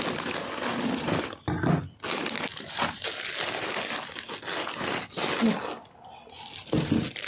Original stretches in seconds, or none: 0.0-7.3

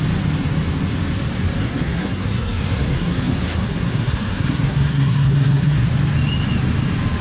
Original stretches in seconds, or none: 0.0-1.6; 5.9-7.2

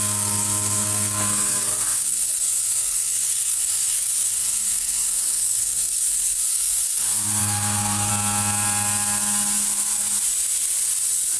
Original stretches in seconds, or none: 8.1-11.4

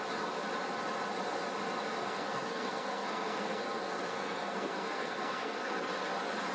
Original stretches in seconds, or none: 0.0-2.0; 5.9-6.5

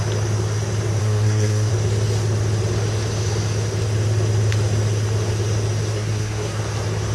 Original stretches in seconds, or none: 0.0-1.0; 1.7-5.9; 6.6-7.1

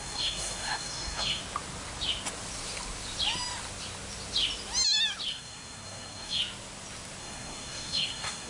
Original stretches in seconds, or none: 1.4-5.3; 6.4-7.2

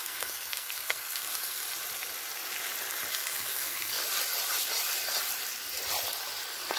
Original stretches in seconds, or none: 1.6-3.1; 4.0-6.8

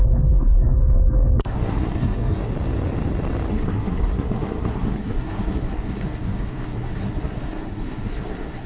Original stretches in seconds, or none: 2.5-3.5